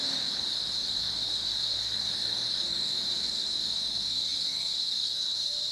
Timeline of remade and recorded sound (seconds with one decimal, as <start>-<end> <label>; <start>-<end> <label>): 0.0-5.7 remade